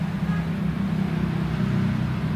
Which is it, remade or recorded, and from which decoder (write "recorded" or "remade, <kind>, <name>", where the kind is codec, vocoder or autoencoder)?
recorded